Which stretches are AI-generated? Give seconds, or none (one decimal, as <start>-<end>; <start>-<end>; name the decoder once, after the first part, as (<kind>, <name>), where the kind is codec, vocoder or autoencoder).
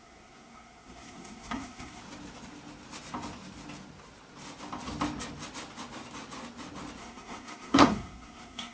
0.0-2.0 (codec, SNAC); 7.0-8.7